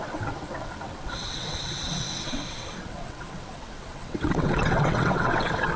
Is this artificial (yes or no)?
yes